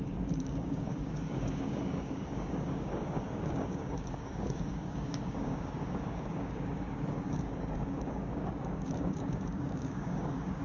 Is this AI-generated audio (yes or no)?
yes